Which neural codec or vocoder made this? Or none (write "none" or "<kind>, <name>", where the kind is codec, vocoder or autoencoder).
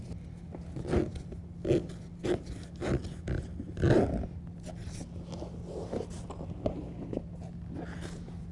none